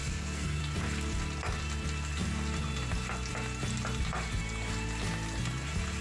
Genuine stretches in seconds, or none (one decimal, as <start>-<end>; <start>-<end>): 0.6-6.0